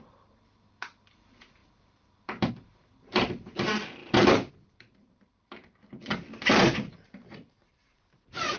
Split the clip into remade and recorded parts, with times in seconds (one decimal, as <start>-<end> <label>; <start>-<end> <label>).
0.0-8.6 remade